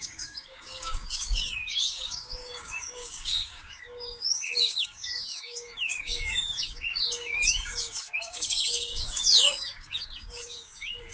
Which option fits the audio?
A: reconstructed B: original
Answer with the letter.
A